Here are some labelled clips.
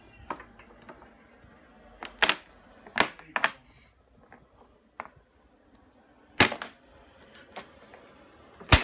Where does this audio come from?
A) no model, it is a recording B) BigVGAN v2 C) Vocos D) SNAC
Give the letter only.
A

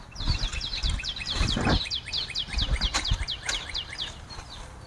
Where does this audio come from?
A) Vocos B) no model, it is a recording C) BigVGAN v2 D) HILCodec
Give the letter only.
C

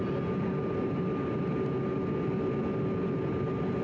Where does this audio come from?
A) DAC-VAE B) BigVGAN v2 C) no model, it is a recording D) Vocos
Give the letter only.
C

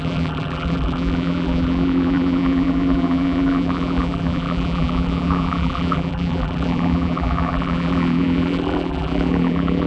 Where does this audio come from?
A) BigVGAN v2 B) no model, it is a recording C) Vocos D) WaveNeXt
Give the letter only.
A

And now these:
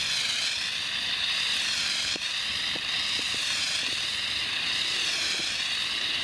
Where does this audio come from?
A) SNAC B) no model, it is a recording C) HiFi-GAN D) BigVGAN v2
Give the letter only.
B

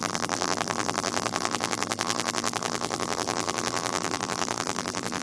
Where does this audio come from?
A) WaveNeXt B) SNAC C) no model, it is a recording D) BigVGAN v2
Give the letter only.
D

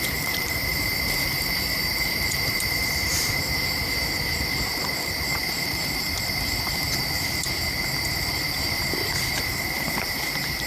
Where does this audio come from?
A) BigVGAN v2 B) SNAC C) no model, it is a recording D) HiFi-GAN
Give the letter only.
A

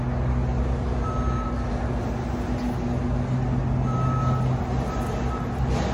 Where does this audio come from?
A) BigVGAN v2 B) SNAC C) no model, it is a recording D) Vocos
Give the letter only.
C